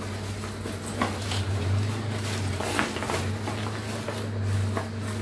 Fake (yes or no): no